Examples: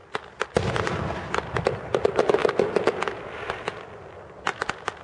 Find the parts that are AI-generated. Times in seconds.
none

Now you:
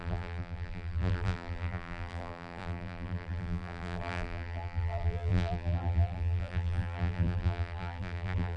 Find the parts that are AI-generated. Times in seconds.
0.0-8.6 (vocoder, BigVGAN v2)

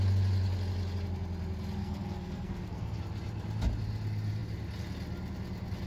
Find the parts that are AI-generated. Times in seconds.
1.8-3.0 (codec, SNAC)

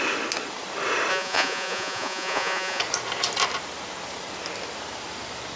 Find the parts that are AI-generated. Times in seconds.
1.1-2.8 (vocoder, Vocos)